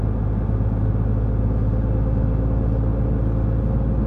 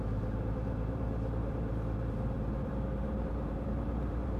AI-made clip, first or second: second